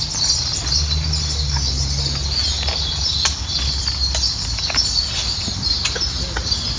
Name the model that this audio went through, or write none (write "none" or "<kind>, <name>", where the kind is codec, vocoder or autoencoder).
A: none